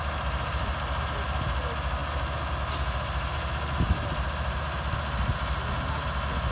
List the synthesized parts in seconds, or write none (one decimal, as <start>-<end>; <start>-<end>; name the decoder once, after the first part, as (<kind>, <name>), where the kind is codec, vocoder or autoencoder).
none

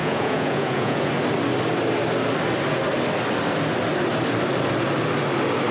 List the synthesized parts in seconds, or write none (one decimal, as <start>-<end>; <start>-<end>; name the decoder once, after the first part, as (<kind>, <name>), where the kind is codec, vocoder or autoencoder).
0.0-1.1 (vocoder, Vocos)

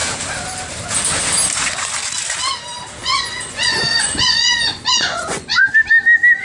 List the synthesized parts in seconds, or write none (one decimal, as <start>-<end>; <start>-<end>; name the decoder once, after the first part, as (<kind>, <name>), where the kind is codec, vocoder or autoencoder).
3.0-5.7 (vocoder, Vocos)

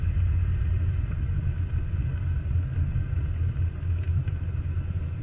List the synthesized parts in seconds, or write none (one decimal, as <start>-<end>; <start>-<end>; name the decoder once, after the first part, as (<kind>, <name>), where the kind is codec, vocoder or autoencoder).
none